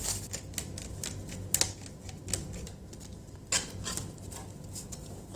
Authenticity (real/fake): real